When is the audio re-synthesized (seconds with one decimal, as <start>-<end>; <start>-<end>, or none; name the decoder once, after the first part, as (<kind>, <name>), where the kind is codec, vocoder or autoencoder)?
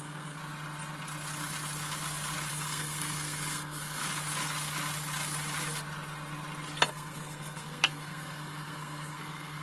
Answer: 0.0-0.4 (codec, SNAC); 2.5-4.0; 6.9-9.6